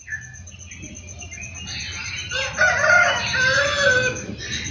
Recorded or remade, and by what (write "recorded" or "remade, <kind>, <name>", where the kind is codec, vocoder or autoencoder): recorded